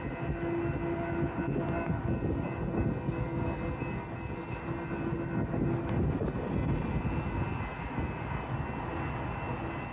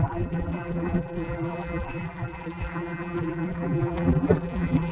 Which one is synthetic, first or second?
second